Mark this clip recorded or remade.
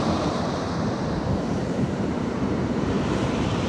remade